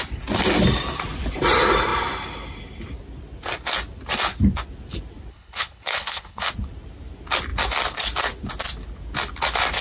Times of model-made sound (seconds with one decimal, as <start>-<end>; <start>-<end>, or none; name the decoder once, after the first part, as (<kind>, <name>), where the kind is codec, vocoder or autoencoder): 5.3-6.5 (codec, HILCodec)

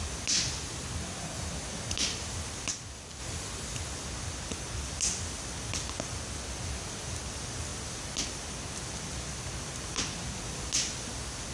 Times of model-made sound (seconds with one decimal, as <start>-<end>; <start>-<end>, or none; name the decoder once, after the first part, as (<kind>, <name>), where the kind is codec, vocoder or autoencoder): none

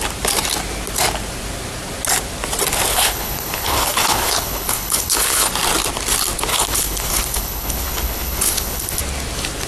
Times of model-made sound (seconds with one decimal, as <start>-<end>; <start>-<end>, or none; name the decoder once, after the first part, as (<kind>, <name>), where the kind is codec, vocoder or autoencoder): 2.9-5.5 (codec, HILCodec); 6.5-9.0

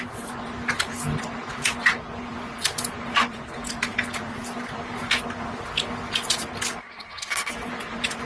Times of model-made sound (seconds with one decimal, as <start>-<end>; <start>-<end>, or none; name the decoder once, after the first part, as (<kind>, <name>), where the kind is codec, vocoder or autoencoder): 6.8-7.5 (codec, HILCodec)